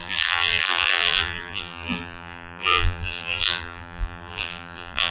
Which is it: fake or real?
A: fake